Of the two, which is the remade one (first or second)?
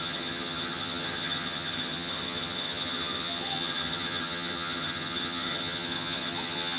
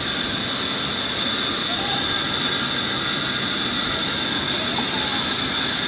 first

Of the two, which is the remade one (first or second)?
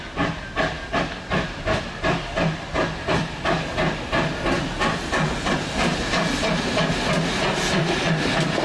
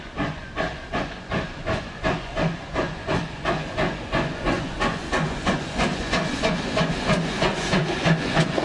second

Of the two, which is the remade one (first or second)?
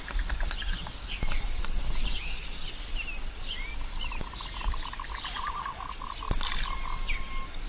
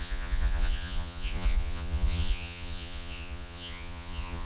second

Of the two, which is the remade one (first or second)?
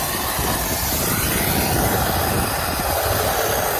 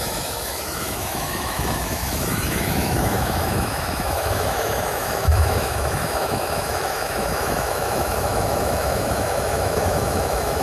second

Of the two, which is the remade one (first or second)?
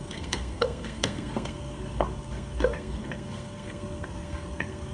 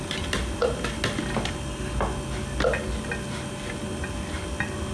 first